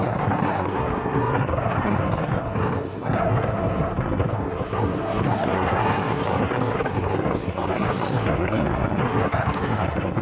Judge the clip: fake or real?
fake